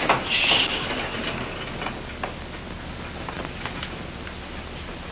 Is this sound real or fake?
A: real